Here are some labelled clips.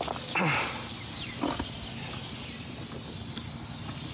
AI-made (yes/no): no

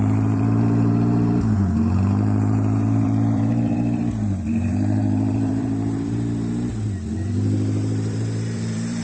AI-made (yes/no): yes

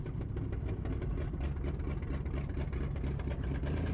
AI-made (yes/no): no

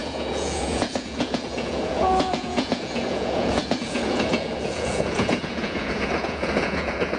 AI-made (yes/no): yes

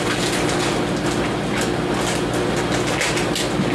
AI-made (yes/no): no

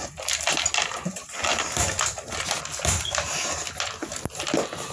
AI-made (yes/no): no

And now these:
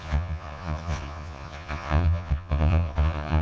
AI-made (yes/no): yes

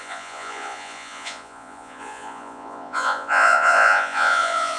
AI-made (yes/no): yes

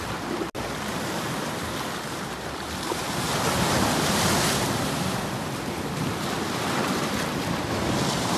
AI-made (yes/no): no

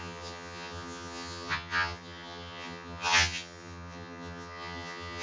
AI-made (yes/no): yes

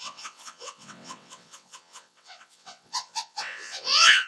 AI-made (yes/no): yes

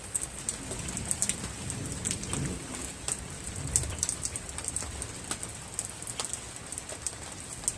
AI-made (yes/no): no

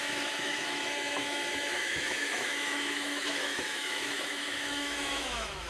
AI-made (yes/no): yes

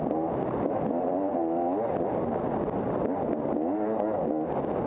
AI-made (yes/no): no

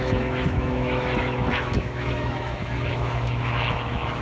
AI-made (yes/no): yes